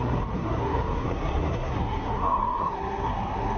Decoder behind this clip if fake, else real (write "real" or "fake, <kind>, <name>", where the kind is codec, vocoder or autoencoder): fake, codec, SNAC